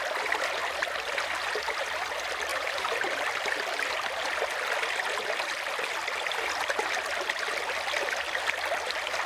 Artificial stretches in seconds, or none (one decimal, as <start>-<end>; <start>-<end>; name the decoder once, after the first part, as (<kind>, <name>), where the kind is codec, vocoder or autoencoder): 0.6-1.2 (vocoder, BigVGAN v2); 2.5-3.3